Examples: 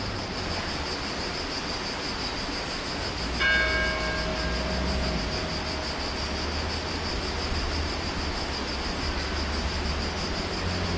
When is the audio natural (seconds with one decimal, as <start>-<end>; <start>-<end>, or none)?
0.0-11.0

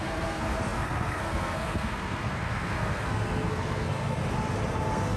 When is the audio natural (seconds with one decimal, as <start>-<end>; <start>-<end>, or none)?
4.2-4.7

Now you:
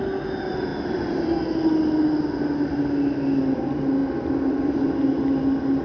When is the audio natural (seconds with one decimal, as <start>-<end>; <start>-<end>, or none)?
0.0-5.8